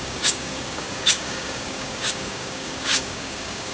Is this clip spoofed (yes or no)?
yes